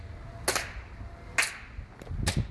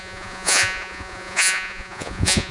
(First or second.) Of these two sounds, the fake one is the second